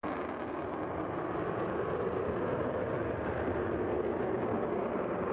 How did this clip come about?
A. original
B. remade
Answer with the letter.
A